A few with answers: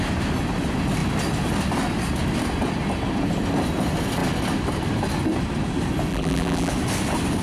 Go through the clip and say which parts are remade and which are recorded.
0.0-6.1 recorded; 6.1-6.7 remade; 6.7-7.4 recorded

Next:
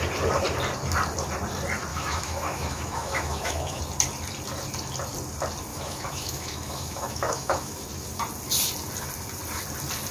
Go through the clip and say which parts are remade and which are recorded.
0.0-1.9 recorded; 1.9-3.8 remade; 3.8-5.7 recorded; 5.7-7.8 remade; 7.8-10.1 recorded

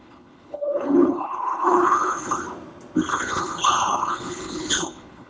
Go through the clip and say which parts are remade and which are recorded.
0.0-2.4 remade; 2.4-3.1 recorded; 3.1-5.3 remade